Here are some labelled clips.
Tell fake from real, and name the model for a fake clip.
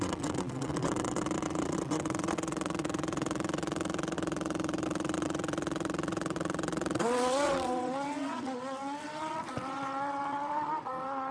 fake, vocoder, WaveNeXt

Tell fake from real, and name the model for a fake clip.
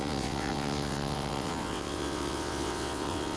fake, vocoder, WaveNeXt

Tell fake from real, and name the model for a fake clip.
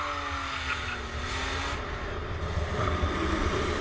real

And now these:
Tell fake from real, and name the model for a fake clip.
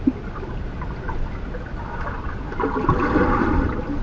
real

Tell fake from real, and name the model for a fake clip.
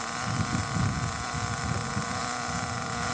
real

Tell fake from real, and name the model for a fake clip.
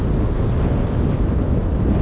real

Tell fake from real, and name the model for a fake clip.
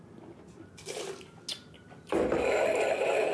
real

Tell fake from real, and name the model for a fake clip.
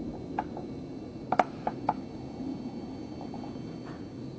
real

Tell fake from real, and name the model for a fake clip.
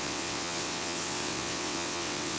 fake, vocoder, WaveNeXt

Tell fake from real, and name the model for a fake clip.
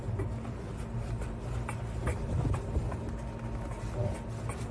real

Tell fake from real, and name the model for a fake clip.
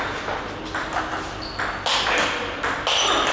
real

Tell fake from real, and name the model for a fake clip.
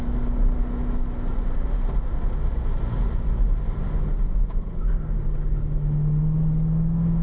real